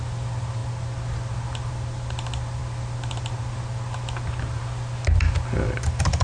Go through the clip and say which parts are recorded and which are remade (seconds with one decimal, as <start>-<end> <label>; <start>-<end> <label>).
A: 0.0-6.2 recorded